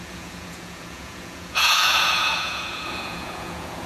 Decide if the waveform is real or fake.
fake